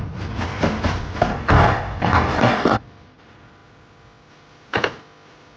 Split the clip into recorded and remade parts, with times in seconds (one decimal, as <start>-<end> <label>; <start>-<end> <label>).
0.0-1.3 recorded; 1.3-2.8 remade; 2.8-5.6 recorded